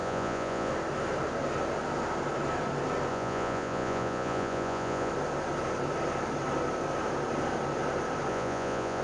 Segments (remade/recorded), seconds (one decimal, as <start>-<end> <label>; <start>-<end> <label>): 0.0-0.7 remade; 0.7-3.1 recorded; 3.1-5.1 remade; 5.1-8.3 recorded; 8.3-9.0 remade